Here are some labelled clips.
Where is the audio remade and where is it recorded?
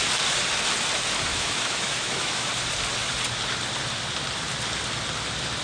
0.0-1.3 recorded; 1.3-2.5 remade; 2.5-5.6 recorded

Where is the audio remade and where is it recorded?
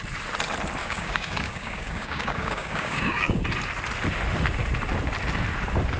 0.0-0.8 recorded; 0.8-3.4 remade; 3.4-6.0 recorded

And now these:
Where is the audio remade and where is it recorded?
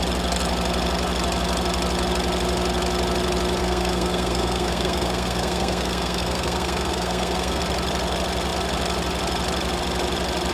0.0-3.6 recorded; 3.6-7.6 remade; 7.6-10.5 recorded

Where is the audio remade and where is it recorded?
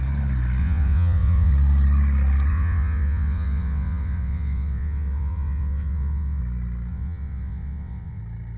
0.0-0.6 recorded; 0.6-1.5 remade; 1.5-2.5 recorded; 2.5-6.4 remade; 6.4-6.9 recorded; 6.9-8.2 remade; 8.2-8.6 recorded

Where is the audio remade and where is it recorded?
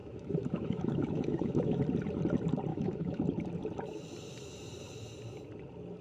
0.0-1.8 remade; 1.8-2.7 recorded; 2.7-3.2 remade; 3.2-6.0 recorded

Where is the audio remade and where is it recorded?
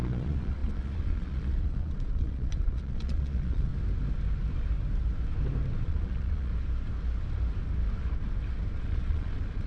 0.0-3.7 remade; 3.7-5.8 recorded; 5.8-6.5 remade; 6.5-8.8 recorded; 8.8-9.7 remade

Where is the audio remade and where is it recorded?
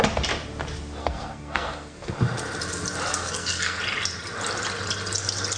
0.0-1.0 recorded; 1.0-2.2 remade; 2.2-3.1 recorded; 3.1-3.8 remade; 3.8-5.6 recorded